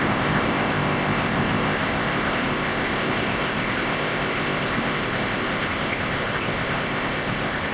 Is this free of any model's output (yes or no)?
no